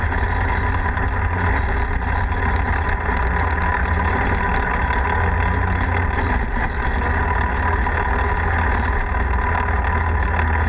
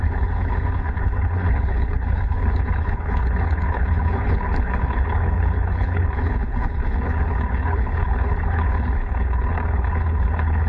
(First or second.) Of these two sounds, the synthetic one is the second